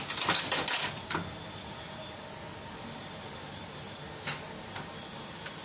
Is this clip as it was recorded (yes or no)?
yes